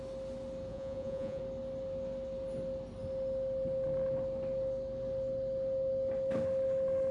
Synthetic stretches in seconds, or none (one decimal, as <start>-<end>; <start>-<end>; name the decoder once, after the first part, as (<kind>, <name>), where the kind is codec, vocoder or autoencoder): 0.7-1.4 (vocoder, Vocos)